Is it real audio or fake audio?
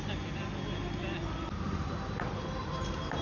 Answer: real